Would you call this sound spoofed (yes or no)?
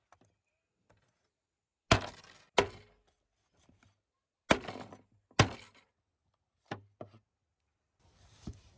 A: no